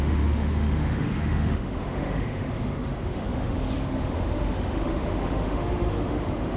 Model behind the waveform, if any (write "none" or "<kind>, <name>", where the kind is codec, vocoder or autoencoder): autoencoder, DAC-VAE